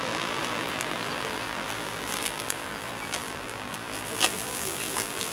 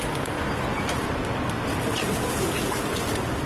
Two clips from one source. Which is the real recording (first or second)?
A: second